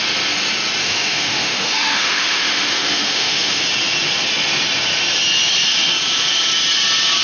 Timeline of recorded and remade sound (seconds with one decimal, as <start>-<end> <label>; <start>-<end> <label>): 0.0-0.8 recorded; 0.8-3.6 remade; 3.6-7.2 recorded